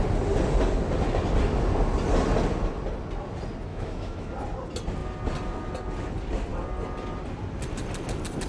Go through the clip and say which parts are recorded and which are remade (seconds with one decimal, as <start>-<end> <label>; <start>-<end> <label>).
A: 0.0-3.7 recorded; 3.7-4.3 remade; 4.3-8.5 recorded